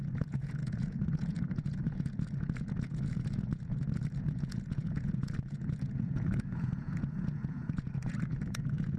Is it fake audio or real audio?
fake